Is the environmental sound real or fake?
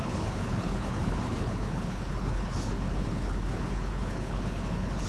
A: fake